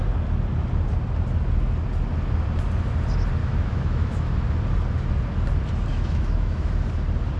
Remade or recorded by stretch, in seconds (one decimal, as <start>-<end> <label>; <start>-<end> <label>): 0.0-3.4 recorded; 3.4-4.4 remade; 4.4-5.9 recorded; 5.9-6.7 remade; 6.7-7.4 recorded